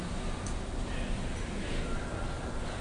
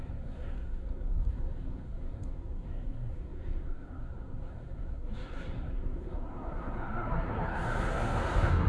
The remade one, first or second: second